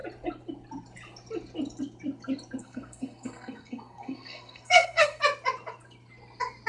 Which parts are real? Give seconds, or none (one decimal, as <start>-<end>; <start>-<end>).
0.0-2.6; 5.2-6.7